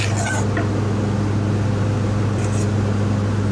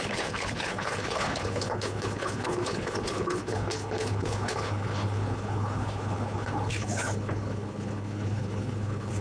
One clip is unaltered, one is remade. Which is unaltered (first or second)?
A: first